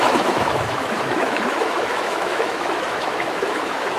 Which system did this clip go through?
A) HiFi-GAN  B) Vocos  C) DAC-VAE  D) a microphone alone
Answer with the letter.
C